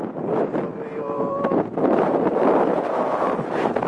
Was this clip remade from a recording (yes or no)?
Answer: no